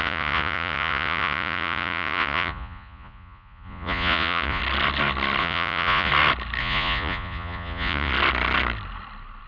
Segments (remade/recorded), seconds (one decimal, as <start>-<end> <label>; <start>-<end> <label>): 0.0-4.6 remade; 4.6-5.4 recorded; 5.4-6.1 remade; 6.1-6.6 recorded; 6.6-8.1 remade; 8.1-9.5 recorded